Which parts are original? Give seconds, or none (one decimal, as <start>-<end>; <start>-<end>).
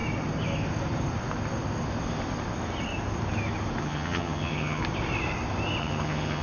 0.0-3.8; 4.8-5.8